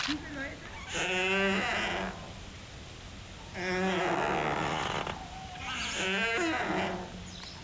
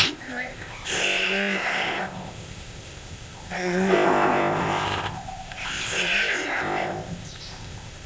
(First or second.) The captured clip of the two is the first